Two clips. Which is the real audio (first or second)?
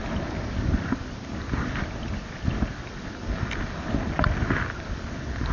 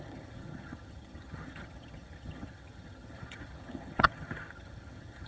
first